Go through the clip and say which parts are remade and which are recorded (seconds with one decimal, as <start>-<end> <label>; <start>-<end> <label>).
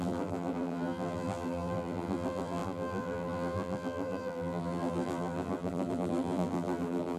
0.0-7.2 remade